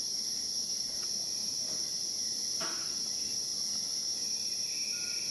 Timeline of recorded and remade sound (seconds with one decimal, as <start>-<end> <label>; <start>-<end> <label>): 0.0-3.5 recorded; 3.5-4.0 remade; 4.0-5.3 recorded